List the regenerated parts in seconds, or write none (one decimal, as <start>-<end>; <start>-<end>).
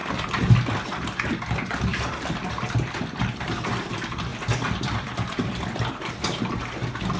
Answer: 1.9-3.9; 4.3-6.1